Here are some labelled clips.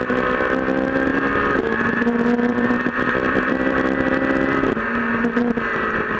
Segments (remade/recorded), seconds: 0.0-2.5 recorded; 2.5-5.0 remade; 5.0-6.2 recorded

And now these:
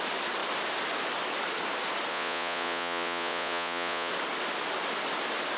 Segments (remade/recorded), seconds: 0.0-2.1 recorded; 2.1-4.1 remade; 4.1-5.6 recorded

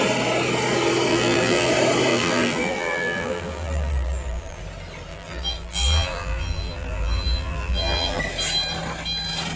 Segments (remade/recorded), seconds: 0.0-1.1 recorded; 1.1-1.7 remade; 1.7-2.1 recorded; 2.1-4.6 remade; 4.6-5.1 recorded; 5.1-8.2 remade; 8.2-9.6 recorded

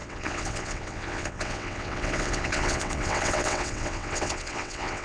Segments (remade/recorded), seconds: 0.0-5.0 remade

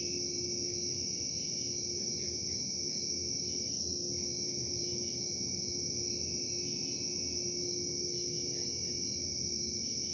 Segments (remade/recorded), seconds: 0.0-10.1 recorded

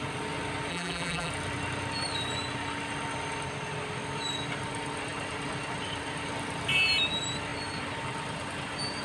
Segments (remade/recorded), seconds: 0.0-0.7 recorded; 0.7-1.3 remade; 1.3-9.0 recorded

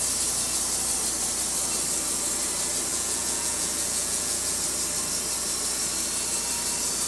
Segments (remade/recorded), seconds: 0.0-2.9 recorded; 2.9-4.6 remade; 4.6-7.1 recorded

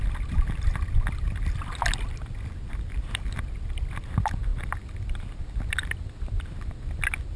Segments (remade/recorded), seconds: 0.0-7.4 recorded